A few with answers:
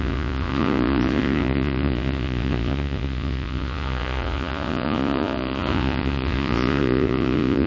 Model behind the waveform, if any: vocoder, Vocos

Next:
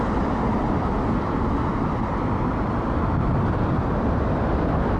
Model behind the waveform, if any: none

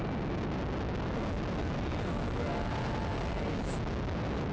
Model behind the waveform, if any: none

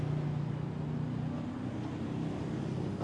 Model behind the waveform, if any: none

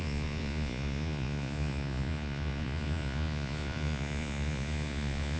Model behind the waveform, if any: vocoder, Vocos